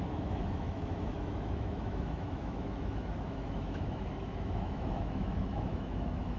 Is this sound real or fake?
fake